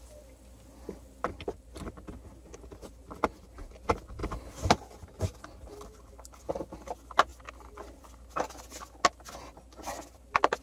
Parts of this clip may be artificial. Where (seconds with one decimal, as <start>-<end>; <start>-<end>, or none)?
none